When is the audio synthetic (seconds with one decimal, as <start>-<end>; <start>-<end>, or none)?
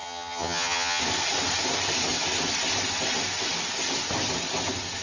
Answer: 0.0-1.0